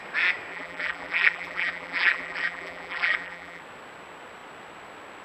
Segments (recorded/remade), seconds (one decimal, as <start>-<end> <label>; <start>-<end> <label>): 0.0-0.5 recorded; 0.5-3.6 remade; 3.6-5.2 recorded